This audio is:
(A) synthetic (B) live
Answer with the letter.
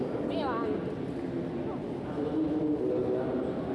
B